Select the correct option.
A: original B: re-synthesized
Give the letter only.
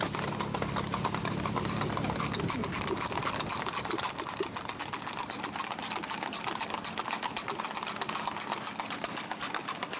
A